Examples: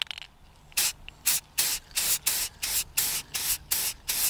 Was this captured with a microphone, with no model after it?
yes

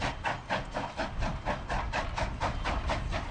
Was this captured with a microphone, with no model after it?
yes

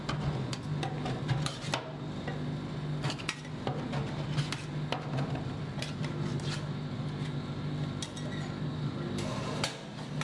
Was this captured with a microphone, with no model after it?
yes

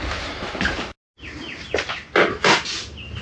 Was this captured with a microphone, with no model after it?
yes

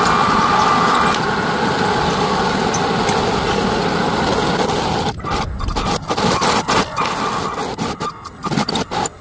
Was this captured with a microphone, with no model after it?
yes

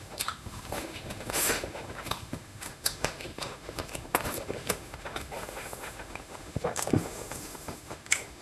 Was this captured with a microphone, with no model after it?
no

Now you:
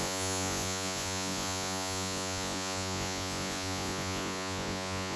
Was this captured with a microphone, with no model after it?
no